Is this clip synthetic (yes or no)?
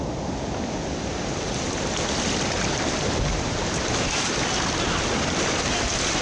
no